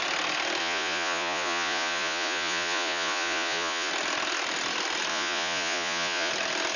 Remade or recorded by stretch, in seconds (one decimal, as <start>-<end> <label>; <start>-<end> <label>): 0.0-0.6 recorded; 0.6-3.9 remade; 3.9-5.1 recorded; 5.1-6.3 remade; 6.3-6.8 recorded